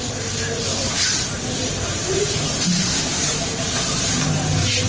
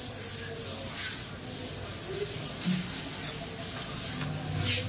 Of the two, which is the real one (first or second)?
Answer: second